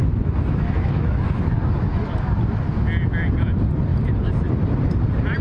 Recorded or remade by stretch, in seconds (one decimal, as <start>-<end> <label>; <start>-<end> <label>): 0.0-1.6 remade; 1.6-5.4 recorded